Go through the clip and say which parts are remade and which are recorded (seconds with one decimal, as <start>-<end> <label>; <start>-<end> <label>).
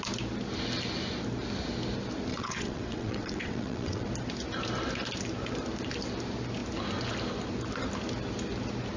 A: 0.0-2.3 recorded; 2.3-4.1 remade; 4.1-9.0 recorded